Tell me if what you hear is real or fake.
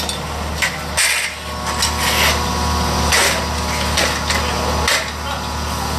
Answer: real